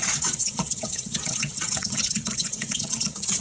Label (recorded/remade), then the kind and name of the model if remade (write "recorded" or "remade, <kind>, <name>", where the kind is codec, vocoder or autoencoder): remade, vocoder, WaveNeXt